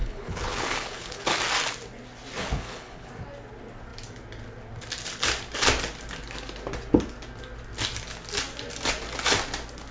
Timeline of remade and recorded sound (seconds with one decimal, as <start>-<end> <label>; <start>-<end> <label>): 0.0-1.4 remade; 1.4-2.4 recorded; 2.4-3.1 remade; 3.1-9.9 recorded